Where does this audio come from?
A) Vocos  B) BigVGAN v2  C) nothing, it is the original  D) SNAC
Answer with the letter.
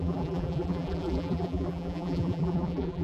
B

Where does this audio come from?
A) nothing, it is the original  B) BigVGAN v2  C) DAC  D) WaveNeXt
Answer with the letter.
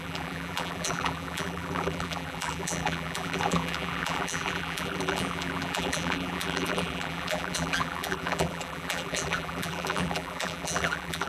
B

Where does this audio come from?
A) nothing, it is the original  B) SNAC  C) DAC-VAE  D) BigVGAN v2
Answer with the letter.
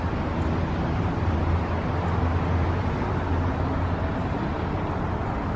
A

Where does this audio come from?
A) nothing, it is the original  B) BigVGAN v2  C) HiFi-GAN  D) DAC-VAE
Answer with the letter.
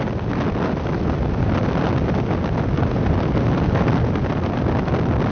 A